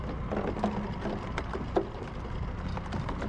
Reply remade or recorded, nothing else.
recorded